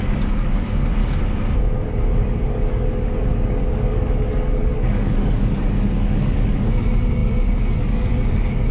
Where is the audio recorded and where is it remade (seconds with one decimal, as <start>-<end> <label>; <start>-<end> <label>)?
0.0-1.0 remade; 1.0-1.6 recorded; 1.6-8.7 remade